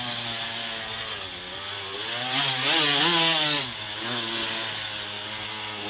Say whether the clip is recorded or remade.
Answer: recorded